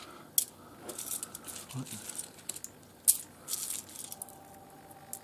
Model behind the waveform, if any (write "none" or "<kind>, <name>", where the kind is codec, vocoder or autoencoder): none